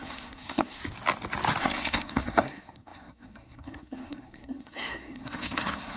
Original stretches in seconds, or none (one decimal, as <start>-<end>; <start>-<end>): 0.8-1.6